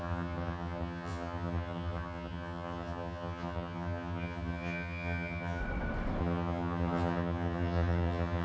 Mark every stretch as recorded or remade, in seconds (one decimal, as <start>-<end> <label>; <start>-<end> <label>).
0.0-5.6 remade; 5.6-6.2 recorded; 6.2-8.4 remade